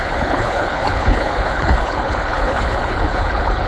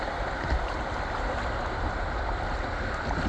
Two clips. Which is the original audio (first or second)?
second